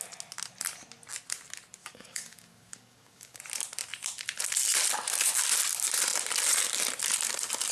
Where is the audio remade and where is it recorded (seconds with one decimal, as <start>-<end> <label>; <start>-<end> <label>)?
0.0-1.8 recorded; 1.8-3.4 remade; 3.4-7.7 recorded